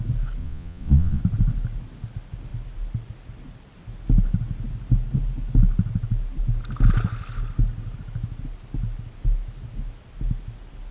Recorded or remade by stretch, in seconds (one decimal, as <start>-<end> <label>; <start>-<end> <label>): 0.0-0.4 recorded; 0.4-1.2 remade; 1.2-10.9 recorded